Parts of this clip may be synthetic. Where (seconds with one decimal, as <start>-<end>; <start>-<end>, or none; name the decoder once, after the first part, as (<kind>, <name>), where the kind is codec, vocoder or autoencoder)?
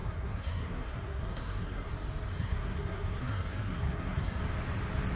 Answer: 0.0-1.9 (codec, SNAC); 2.4-4.4